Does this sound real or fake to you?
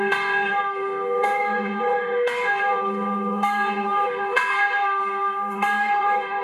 fake